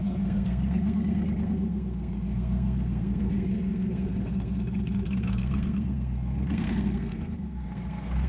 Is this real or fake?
fake